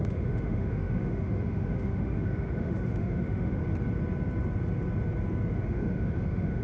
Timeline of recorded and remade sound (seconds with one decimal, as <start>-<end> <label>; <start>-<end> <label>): 0.0-3.6 remade; 3.6-5.5 recorded; 5.5-6.6 remade